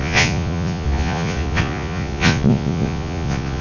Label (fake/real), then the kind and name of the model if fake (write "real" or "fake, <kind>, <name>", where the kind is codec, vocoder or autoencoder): fake, vocoder, Vocos